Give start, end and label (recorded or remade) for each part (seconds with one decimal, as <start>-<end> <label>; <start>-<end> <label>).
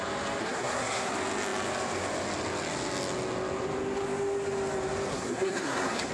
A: 0.0-0.4 recorded; 0.4-1.1 remade; 1.1-5.1 recorded; 5.1-6.1 remade